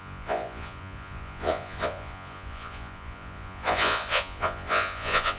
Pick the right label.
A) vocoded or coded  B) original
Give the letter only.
A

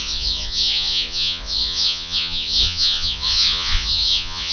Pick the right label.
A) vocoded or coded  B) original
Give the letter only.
A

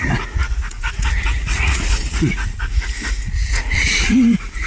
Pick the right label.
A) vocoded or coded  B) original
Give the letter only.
A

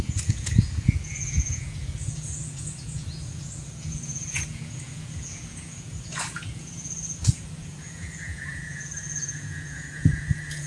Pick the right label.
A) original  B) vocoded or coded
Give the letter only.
B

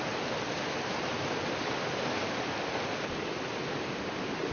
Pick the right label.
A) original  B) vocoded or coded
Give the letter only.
A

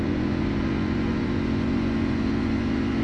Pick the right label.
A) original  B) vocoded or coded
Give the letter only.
B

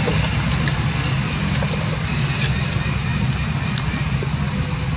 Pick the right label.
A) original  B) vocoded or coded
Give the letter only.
A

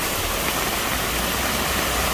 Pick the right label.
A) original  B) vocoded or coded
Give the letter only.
A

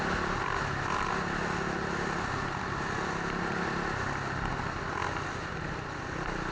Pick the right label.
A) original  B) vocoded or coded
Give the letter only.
A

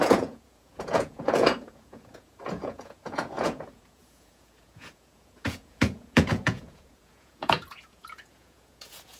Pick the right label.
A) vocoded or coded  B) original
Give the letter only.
A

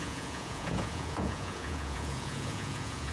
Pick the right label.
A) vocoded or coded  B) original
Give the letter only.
A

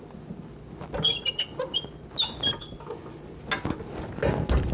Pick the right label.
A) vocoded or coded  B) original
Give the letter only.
B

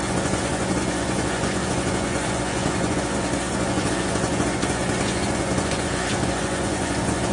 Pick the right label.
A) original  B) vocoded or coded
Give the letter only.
B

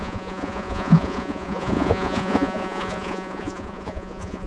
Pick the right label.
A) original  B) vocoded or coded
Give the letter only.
B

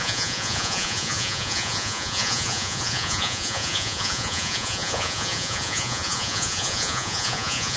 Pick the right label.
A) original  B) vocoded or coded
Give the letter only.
B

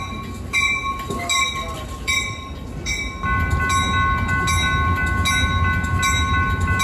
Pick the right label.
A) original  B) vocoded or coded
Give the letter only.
A